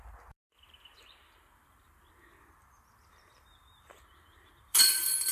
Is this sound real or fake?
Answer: fake